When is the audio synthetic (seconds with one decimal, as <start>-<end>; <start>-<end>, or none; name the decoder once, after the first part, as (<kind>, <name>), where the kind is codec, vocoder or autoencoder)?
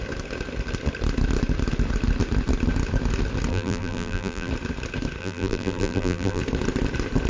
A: 3.5-4.5 (vocoder, BigVGAN v2); 5.2-6.4